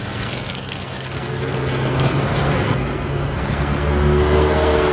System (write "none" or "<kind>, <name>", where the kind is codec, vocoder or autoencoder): codec, SNAC